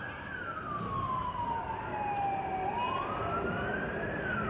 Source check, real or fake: real